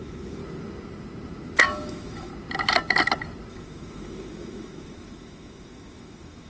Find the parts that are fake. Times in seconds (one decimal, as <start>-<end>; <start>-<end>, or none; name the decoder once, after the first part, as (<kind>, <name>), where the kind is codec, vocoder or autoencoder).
0.0-0.4 (autoencoder, DAC-VAE); 1.6-2.3; 3.5-6.5